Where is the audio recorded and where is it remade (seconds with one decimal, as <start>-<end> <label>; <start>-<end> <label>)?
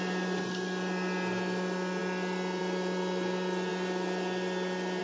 0.0-5.0 recorded